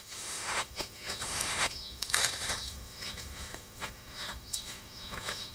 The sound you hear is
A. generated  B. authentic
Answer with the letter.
A